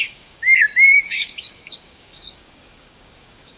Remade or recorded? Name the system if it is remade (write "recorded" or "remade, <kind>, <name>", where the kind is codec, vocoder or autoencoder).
remade, codec, DAC